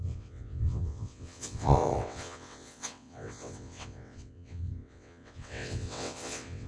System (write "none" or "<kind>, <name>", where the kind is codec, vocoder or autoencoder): vocoder, WaveNeXt